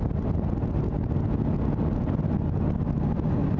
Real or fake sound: real